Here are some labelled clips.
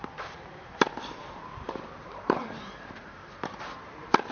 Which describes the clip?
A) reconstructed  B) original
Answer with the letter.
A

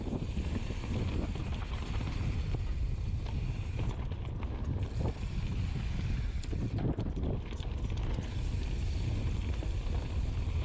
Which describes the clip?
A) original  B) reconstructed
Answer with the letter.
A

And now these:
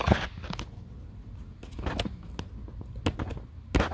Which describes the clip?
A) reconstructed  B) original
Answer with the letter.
B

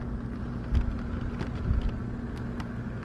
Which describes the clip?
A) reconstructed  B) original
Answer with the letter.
B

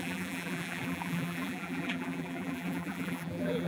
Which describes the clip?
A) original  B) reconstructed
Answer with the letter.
B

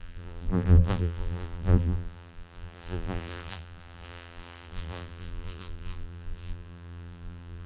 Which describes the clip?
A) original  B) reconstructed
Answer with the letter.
B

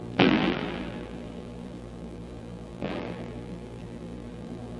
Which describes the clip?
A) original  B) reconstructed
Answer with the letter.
B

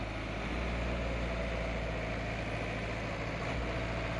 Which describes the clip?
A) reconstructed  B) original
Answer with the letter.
B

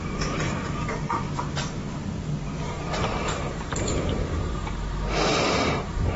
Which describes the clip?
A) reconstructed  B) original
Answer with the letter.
A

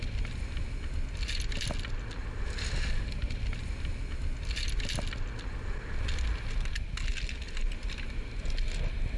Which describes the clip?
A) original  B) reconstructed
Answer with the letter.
A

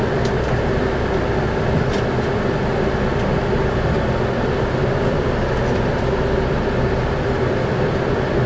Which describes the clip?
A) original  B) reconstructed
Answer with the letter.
A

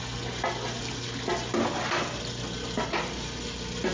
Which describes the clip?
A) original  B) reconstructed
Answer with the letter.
A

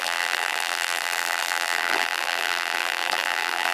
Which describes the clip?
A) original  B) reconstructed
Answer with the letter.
B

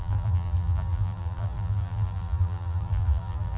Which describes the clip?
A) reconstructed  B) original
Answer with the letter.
A